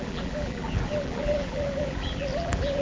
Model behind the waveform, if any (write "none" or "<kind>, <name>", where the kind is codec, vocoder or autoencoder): vocoder, BigVGAN v2